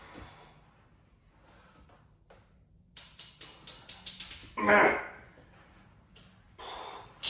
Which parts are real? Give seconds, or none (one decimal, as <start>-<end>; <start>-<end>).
0.0-4.4; 5.0-7.3